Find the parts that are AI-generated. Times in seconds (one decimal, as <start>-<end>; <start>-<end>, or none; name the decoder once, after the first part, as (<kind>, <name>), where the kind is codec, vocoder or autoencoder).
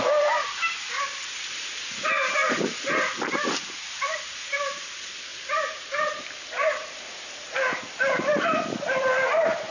0.0-5.3 (vocoder, BigVGAN v2); 6.2-9.7